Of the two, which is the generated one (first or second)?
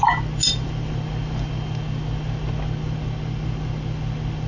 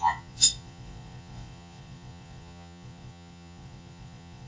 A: second